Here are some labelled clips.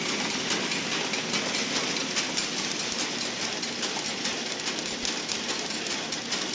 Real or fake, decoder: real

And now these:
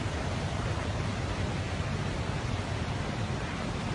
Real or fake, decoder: real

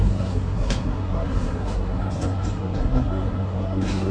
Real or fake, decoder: fake, codec, SNAC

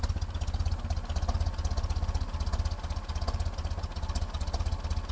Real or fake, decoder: real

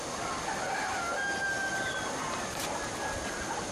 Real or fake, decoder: real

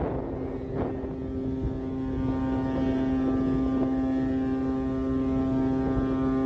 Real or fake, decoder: real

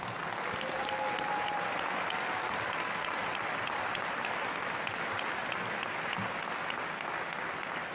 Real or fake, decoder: real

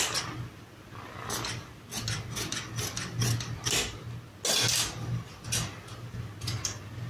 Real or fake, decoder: real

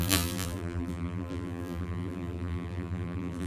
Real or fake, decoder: fake, vocoder, BigVGAN v2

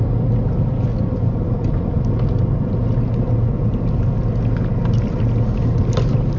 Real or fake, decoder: real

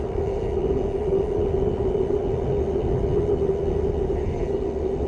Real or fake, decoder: real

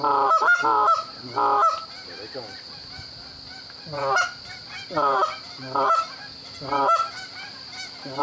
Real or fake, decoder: real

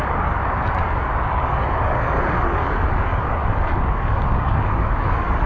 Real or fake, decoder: fake, codec, DAC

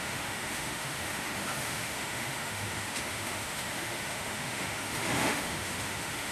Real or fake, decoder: fake, autoencoder, DAC-VAE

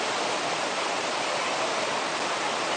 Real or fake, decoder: real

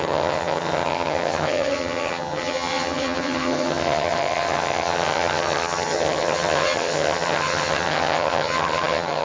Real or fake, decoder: fake, vocoder, HiFi-GAN